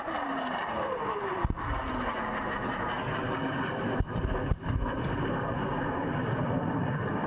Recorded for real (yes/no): yes